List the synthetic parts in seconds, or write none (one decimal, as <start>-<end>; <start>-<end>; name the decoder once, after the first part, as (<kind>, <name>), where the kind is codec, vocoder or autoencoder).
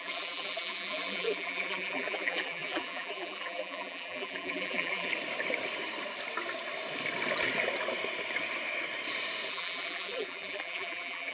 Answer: 0.0-5.1 (vocoder, BigVGAN v2); 9.5-11.3